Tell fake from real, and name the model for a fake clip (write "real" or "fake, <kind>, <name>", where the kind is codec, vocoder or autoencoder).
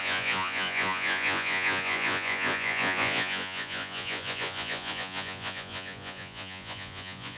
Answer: fake, vocoder, Vocos